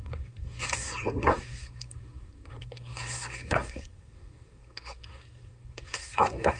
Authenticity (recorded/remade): remade